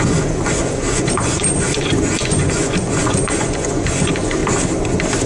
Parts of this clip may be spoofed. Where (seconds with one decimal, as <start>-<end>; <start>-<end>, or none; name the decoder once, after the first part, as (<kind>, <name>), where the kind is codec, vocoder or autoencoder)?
0.0-4.4 (vocoder, Vocos)